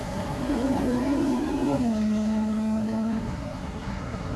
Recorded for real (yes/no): no